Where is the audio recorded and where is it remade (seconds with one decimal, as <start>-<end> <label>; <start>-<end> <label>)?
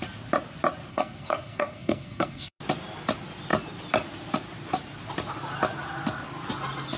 0.0-0.9 recorded; 0.9-2.6 remade; 2.6-7.0 recorded